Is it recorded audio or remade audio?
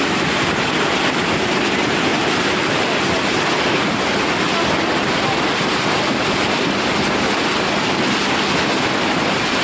recorded